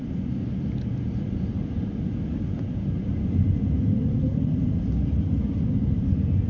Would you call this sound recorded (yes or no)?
no